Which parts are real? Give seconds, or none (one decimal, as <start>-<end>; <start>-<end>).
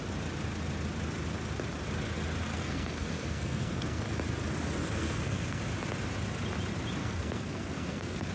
0.0-2.5; 4.0-4.8; 5.6-7.0